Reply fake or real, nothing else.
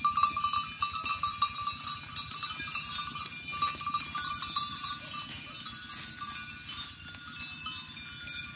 real